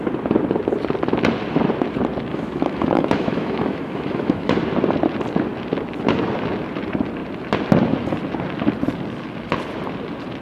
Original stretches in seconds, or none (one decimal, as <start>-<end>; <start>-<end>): 0.0-2.3; 4.6-10.4